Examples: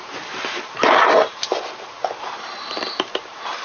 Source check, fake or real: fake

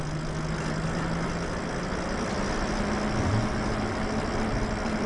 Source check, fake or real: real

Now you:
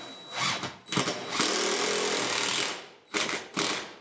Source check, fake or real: real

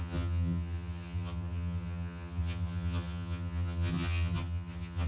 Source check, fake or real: fake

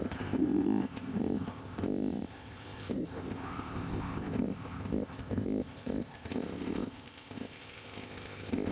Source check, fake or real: fake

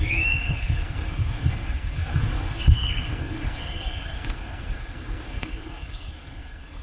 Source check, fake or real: fake